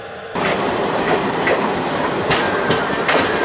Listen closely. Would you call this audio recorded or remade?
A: recorded